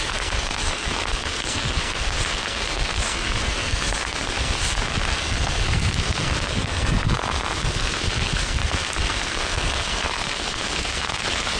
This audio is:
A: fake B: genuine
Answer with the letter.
A